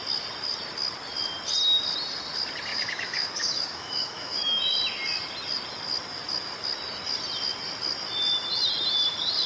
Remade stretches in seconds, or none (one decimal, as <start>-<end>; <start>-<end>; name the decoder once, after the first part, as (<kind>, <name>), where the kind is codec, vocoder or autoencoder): 2.7-4.6 (autoencoder, DAC-VAE)

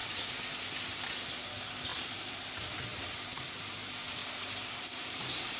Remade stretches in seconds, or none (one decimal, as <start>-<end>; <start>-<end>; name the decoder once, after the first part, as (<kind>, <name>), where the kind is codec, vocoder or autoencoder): 1.9-2.5 (vocoder, BigVGAN v2); 2.9-3.7; 4.2-5.6

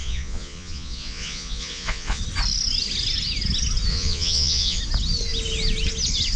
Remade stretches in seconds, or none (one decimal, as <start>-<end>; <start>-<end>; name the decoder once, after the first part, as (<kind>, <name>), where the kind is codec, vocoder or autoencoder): 0.0-2.2 (vocoder, Vocos); 3.9-4.8

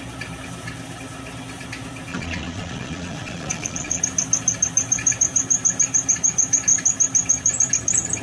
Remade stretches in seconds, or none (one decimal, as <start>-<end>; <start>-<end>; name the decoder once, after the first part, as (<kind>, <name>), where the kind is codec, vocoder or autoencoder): 2.1-4.0 (vocoder, Vocos)

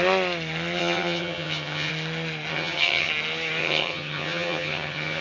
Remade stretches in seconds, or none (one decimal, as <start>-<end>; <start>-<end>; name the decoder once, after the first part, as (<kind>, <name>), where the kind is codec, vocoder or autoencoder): 0.8-1.9 (vocoder, HiFi-GAN); 2.5-3.1; 3.6-5.2

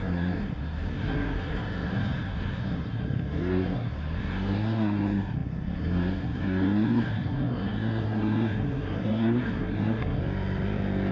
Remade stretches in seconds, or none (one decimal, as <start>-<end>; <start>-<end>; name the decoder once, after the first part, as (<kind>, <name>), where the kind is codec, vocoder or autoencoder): 0.0-10.2 (codec, SNAC)

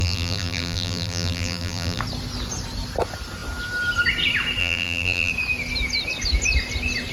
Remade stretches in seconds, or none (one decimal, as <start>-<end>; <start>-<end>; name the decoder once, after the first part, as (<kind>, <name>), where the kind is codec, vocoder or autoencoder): 0.0-2.0 (vocoder, BigVGAN v2); 4.6-5.3